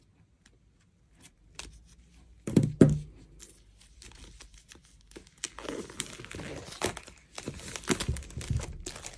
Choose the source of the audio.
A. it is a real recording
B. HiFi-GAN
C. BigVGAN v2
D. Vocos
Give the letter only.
A